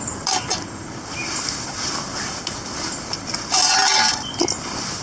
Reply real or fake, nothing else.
real